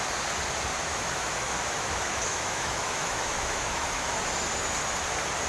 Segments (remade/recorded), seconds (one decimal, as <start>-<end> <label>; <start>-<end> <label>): 0.0-0.9 recorded; 0.9-4.2 remade; 4.2-5.5 recorded